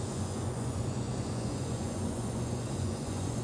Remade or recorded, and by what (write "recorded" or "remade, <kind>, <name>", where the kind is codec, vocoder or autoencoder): remade, vocoder, Vocos